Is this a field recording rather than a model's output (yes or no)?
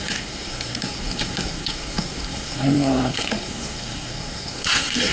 no